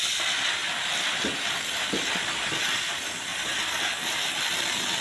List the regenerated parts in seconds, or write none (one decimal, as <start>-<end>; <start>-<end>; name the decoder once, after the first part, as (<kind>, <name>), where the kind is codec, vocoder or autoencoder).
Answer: 0.0-5.0 (vocoder, BigVGAN v2)